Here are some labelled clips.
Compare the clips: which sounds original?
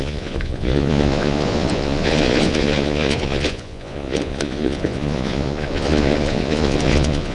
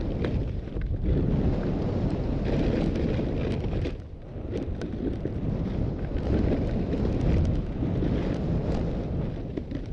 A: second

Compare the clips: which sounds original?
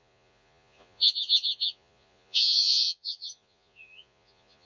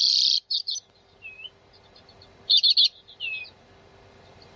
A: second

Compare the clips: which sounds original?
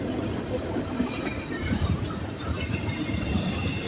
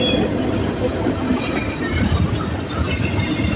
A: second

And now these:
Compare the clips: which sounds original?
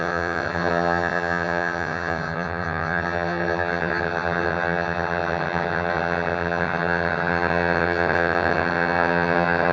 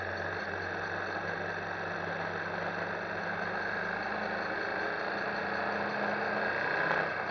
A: second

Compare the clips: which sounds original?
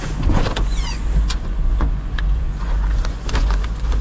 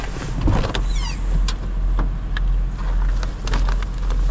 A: second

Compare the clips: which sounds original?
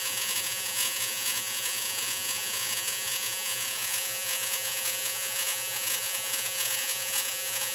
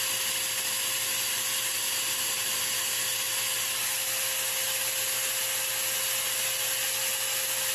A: second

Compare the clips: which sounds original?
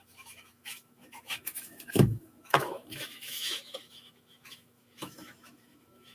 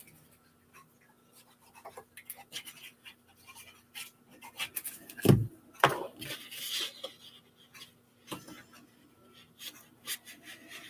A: second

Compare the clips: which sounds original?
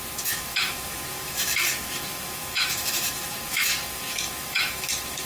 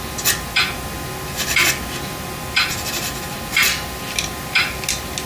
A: second